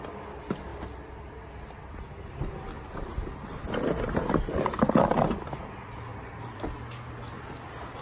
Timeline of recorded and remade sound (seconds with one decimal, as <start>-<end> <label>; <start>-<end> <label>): 0.0-6.1 recorded; 6.1-6.6 remade; 6.6-8.0 recorded